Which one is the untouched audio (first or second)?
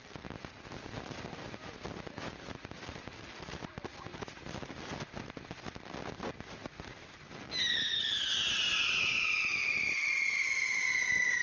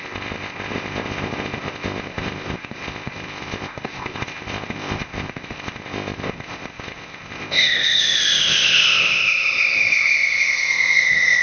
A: first